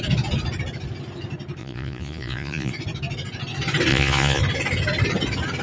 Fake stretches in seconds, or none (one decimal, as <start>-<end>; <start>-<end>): 1.6-2.7; 3.9-4.4